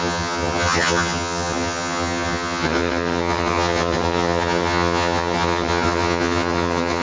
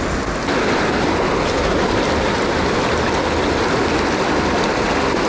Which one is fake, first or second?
first